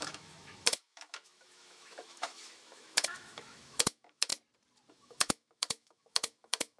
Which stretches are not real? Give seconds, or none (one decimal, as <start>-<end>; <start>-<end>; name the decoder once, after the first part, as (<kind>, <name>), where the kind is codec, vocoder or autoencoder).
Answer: 0.0-4.3 (autoencoder, DAC-VAE); 4.9-6.8

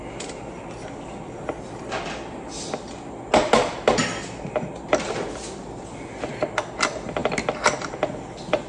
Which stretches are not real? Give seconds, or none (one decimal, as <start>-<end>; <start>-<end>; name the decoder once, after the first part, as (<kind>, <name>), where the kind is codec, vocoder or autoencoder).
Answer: none